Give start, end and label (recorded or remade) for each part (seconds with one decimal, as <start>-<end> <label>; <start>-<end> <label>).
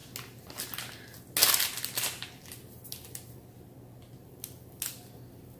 0.0-5.6 recorded